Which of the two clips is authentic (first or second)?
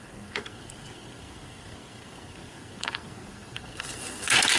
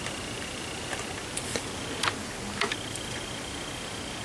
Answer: second